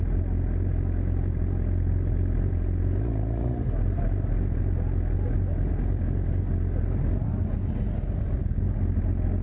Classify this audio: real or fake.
real